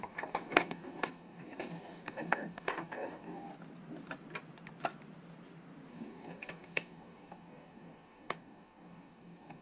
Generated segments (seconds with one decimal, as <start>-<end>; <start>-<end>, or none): 0.0-3.5; 5.9-9.6